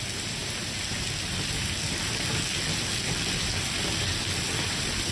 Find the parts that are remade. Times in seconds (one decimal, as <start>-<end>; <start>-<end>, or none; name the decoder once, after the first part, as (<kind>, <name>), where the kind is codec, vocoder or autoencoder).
none